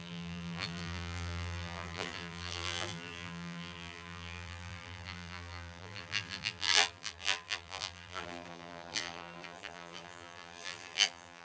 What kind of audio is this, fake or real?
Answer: fake